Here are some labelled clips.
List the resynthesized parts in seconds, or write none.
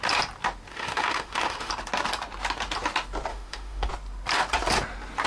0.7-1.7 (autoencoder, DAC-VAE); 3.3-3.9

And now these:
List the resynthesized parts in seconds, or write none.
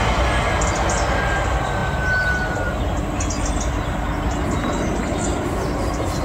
none